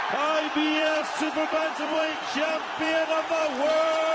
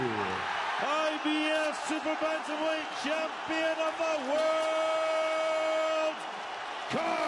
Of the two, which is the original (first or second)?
second